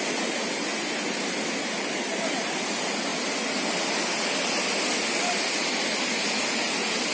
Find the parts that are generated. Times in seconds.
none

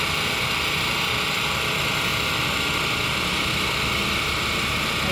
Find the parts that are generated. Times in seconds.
none

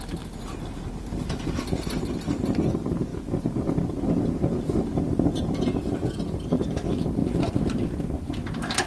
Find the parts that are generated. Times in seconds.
none

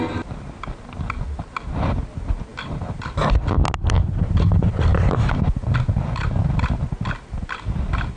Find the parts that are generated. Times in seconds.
none

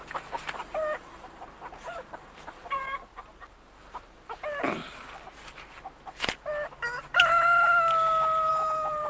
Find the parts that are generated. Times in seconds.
0.6-4.8 (vocoder, BigVGAN v2); 8.5-9.1